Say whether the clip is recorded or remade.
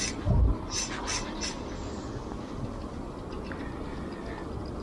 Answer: recorded